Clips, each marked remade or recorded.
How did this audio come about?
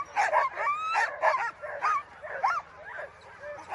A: recorded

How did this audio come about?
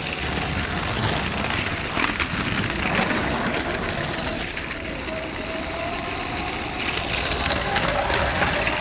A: recorded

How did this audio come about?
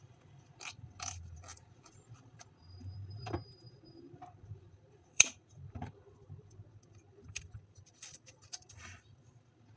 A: remade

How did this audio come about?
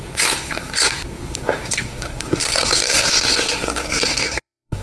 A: remade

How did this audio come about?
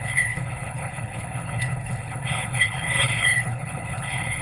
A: remade